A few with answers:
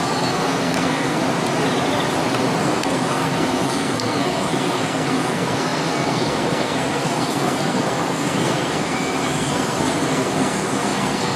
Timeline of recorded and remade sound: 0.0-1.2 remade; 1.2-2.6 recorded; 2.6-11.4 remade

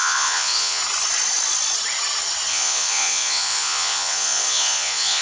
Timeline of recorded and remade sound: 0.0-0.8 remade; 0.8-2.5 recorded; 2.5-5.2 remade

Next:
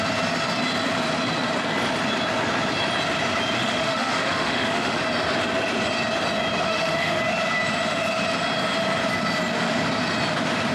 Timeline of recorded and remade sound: 0.0-3.6 recorded; 3.6-5.0 remade; 5.0-6.7 recorded; 6.7-7.2 remade; 7.2-10.7 recorded